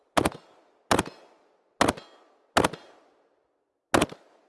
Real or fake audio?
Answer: real